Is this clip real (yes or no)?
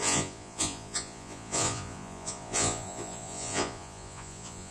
no